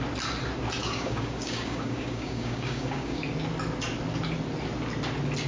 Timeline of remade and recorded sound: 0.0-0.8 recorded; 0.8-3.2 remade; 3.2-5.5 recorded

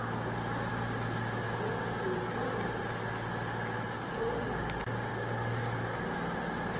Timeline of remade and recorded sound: 0.0-5.1 recorded; 5.1-6.0 remade; 6.0-6.8 recorded